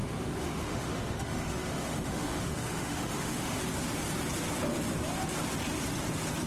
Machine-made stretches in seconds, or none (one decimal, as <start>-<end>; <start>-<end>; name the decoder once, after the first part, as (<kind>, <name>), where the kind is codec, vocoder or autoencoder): 0.0-3.6 (autoencoder, DAC-VAE)